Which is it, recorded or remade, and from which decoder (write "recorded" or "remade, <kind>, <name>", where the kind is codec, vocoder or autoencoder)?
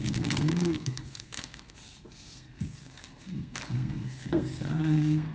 remade, codec, SNAC